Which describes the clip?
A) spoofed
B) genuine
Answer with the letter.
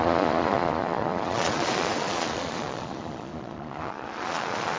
A